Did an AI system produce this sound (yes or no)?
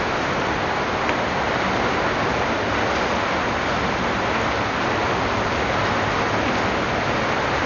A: no